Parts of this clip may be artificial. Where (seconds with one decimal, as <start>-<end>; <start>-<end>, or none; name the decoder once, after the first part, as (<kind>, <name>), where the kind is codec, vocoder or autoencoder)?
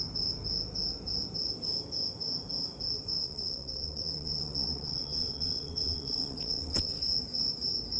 3.2-7.0 (vocoder, WaveNeXt)